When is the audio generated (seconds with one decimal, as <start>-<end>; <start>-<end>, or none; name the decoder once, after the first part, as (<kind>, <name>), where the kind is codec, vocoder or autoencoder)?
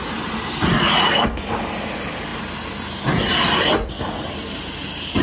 none